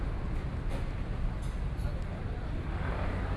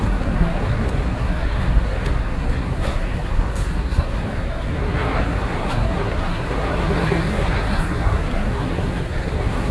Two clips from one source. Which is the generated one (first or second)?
second